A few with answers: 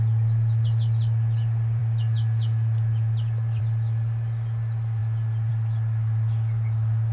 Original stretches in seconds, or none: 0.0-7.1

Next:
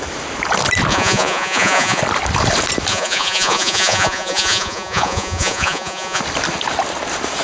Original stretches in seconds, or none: 0.0-0.9; 2.0-2.9; 6.2-7.4

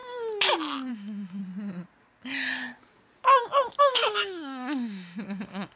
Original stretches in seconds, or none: 0.0-0.9; 1.4-3.8

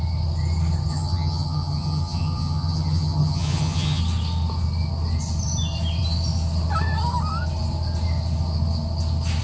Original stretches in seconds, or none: 0.0-0.9; 4.0-9.4

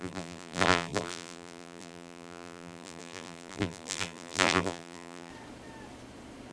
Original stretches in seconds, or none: 5.3-6.5

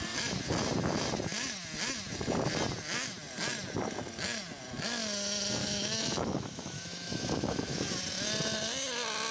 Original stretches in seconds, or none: 0.0-5.6; 7.9-9.3